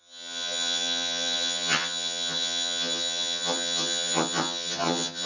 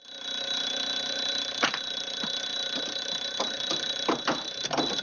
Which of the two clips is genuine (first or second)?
second